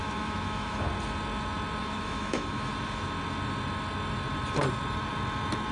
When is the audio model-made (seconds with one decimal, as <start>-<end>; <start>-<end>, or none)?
0.0-0.8; 1.8-2.7